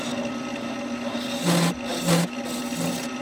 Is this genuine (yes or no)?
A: yes